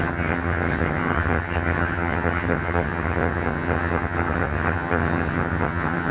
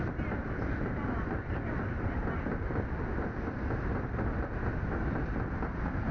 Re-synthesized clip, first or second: first